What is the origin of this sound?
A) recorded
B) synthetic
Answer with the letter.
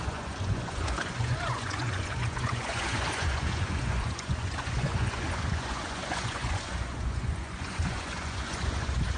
B